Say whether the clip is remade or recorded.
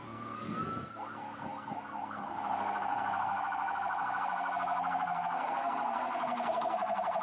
remade